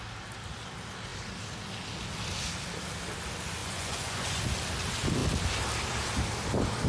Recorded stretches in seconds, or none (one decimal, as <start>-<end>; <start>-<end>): 0.0-3.6; 4.4-6.9